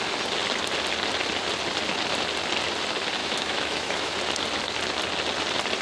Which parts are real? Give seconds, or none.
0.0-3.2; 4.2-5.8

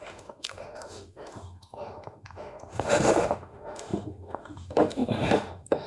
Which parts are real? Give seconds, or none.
none

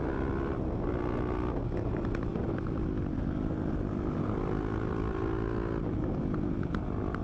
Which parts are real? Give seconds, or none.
0.0-7.2

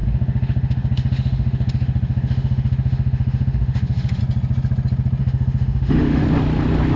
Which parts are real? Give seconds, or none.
4.2-5.2; 6.2-7.0